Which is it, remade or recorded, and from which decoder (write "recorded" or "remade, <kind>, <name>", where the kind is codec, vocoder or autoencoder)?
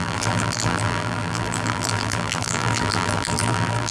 remade, vocoder, BigVGAN v2